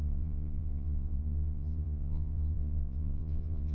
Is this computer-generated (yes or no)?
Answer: yes